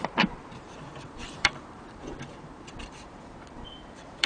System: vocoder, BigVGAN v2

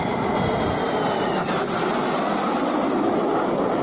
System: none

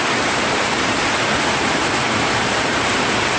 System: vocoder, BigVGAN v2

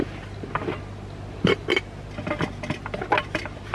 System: none